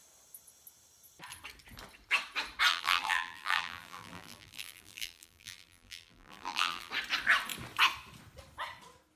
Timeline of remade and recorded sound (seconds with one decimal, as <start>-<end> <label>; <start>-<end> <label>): 0.0-2.7 recorded; 2.7-6.9 remade; 6.9-9.2 recorded